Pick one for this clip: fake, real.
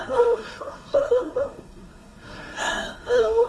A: fake